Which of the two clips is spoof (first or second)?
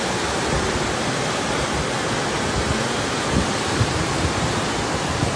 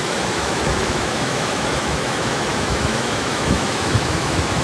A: second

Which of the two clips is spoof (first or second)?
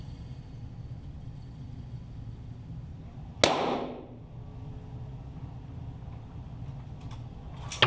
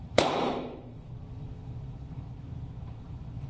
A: second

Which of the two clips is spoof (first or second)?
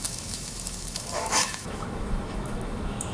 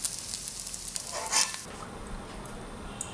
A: first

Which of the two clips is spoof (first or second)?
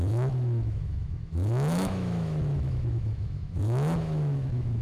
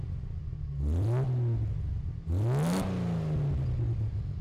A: first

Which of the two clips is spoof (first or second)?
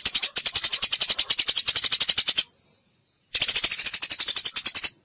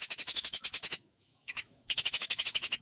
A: second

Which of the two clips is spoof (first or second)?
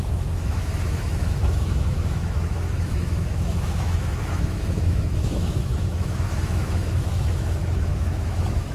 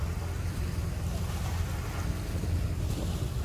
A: first